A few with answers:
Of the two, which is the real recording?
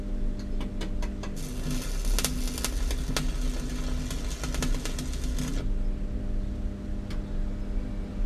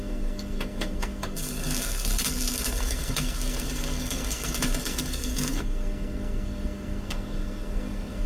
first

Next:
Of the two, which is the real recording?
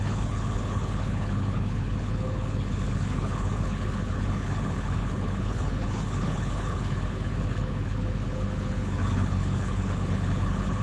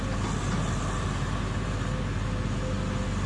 second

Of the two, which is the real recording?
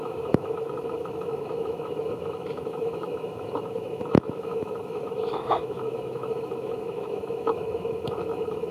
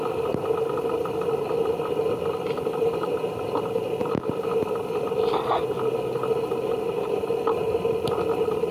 second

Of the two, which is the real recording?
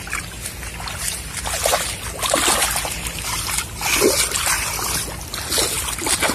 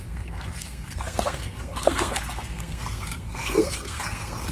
first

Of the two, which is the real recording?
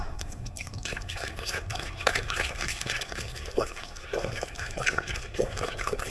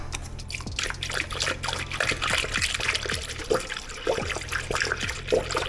second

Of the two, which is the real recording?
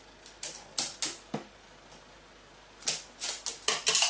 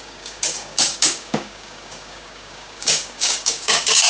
first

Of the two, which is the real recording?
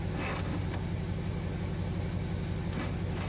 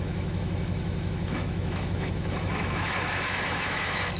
first